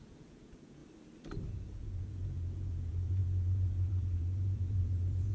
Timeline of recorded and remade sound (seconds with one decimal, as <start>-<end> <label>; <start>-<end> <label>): 0.0-0.8 remade; 0.8-1.5 recorded; 1.5-5.3 remade

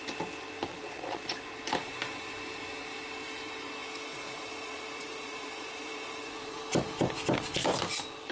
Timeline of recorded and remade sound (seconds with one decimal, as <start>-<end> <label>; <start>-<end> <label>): 0.0-0.7 recorded; 0.7-1.4 remade; 1.4-4.1 recorded; 4.1-6.6 remade; 6.6-8.3 recorded

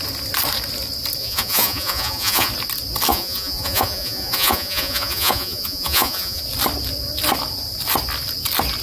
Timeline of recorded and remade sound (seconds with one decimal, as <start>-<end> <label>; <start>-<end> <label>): 0.0-1.2 recorded; 1.2-2.5 remade; 2.5-3.1 recorded; 3.1-6.4 remade; 6.4-8.8 recorded

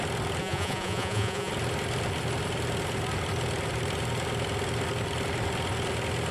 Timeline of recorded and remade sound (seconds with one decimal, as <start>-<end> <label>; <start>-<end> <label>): 0.0-0.4 recorded; 0.4-1.5 remade; 1.5-6.3 recorded

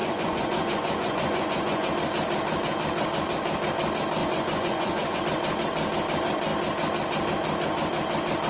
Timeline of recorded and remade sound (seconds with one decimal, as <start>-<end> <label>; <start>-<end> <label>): 0.0-1.9 remade; 1.9-4.2 recorded; 4.2-5.2 remade; 5.2-8.5 recorded